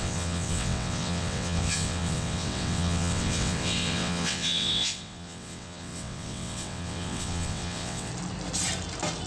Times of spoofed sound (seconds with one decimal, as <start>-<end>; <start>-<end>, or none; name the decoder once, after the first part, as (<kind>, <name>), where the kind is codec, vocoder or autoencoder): 0.0-8.1 (vocoder, WaveNeXt)

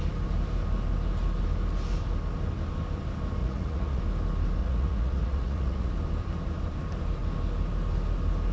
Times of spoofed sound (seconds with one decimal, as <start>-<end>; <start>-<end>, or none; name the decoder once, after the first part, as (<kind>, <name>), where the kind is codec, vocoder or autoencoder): 3.4-4.0 (vocoder, Vocos); 4.6-5.9

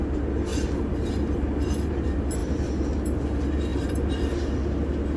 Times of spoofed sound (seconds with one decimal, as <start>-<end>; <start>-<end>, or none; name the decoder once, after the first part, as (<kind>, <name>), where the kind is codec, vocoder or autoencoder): 0.5-1.9 (vocoder, BigVGAN v2); 2.4-3.2; 3.7-4.4

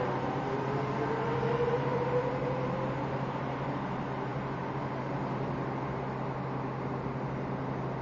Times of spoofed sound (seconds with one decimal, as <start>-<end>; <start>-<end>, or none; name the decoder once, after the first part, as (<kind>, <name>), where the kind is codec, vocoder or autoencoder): none